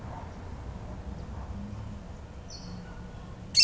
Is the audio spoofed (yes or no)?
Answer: no